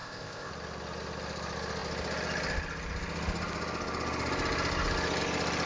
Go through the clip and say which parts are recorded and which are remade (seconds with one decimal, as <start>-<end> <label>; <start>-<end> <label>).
0.0-0.5 remade; 0.5-5.7 recorded